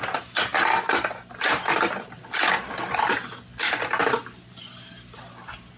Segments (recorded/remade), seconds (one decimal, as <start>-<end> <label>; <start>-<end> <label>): 0.0-5.8 recorded